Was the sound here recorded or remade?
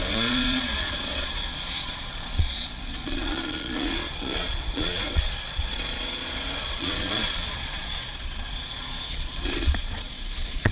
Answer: remade